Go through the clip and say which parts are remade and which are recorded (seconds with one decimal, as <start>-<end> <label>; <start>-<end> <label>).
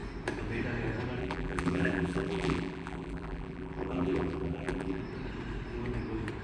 0.0-1.2 recorded; 1.2-5.0 remade; 5.0-6.4 recorded